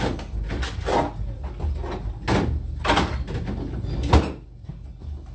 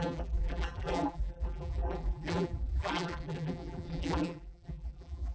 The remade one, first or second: second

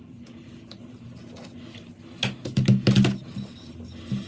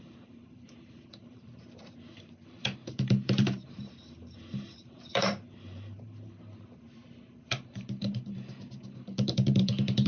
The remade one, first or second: second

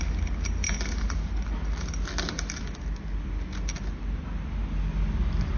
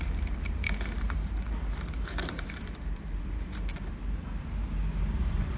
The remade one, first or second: second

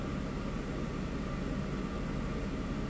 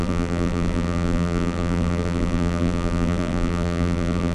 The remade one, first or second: second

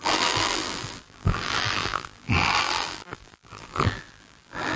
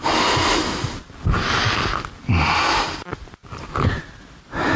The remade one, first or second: first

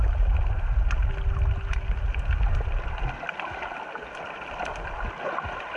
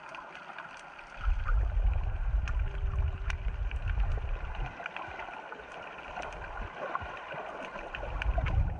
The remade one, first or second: second